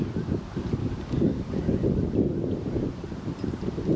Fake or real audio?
real